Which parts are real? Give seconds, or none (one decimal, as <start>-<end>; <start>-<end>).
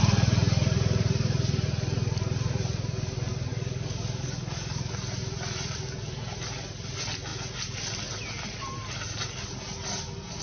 0.0-3.5; 4.9-10.4